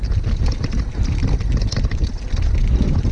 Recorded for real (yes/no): yes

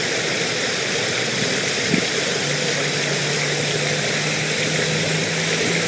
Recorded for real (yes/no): no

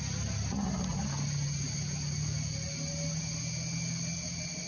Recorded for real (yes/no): yes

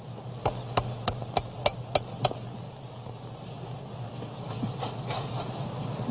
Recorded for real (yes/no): yes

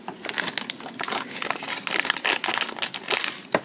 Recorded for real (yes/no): yes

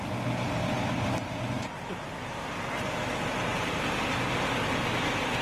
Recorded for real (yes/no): yes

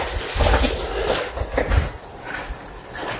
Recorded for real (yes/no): yes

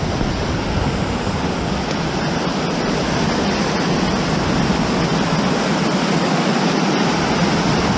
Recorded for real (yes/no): yes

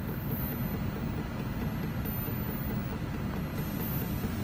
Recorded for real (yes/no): yes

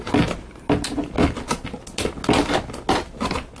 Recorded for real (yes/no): yes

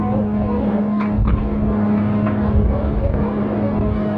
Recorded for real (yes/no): no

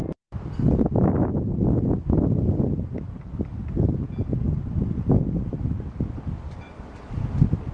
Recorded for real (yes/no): yes